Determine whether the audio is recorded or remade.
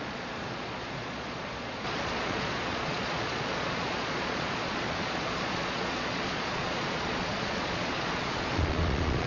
remade